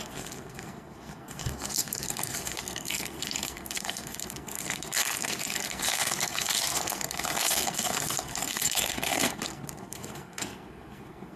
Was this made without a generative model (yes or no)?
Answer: no